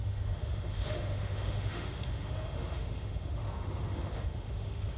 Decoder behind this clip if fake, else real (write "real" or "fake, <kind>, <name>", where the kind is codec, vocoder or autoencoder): fake, autoencoder, DAC-VAE